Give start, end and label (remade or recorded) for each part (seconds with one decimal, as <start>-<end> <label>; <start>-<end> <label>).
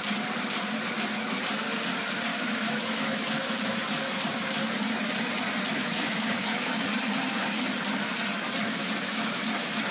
0.0-2.3 recorded; 2.3-3.5 remade; 3.5-5.7 recorded; 5.7-6.7 remade; 6.7-8.8 recorded; 8.8-9.4 remade; 9.4-9.9 recorded